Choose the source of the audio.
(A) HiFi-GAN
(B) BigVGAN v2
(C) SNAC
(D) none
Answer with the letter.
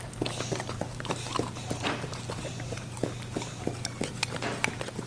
D